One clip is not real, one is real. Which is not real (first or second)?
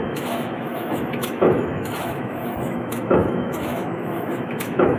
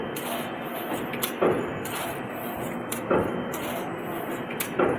first